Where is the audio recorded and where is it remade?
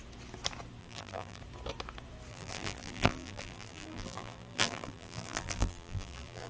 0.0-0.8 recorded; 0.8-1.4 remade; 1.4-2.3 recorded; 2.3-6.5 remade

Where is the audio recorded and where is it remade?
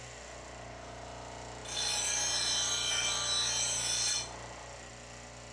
0.0-5.5 recorded